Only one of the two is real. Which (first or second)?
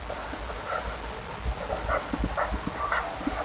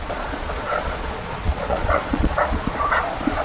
first